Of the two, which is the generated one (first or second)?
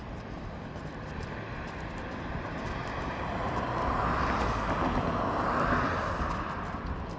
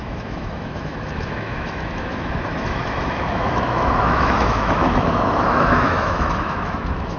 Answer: second